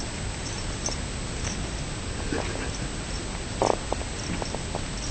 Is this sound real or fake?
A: real